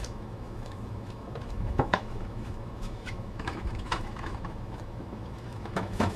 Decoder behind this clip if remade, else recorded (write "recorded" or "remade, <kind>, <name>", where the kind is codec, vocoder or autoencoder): remade, autoencoder, DAC-VAE